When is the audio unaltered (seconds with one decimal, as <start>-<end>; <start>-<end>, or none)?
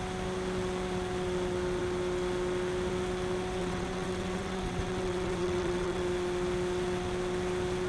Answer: 0.0-3.6; 6.0-7.9